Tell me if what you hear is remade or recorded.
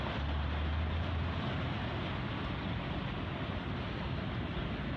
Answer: recorded